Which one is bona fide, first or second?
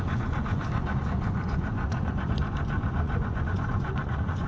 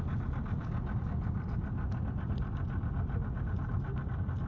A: second